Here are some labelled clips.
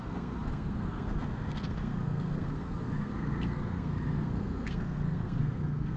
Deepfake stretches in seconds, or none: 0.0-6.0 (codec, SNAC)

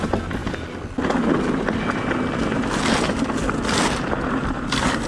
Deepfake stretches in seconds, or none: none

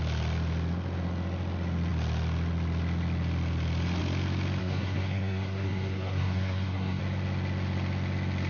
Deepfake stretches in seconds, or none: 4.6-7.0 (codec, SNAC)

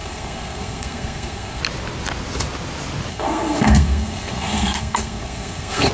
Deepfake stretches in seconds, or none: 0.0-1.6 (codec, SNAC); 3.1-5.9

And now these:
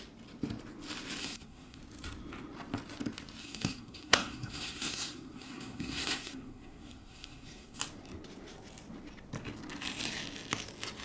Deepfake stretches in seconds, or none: 1.2-1.8 (codec, SNAC); 3.4-7.8

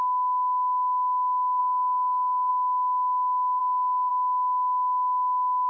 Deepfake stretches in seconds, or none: 1.6-2.5 (codec, SNAC)

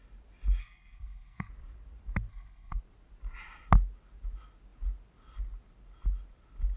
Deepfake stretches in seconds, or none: 0.6-1.5 (codec, SNAC); 2.3-2.8